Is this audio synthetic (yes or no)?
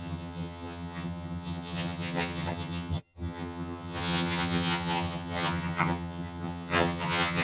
yes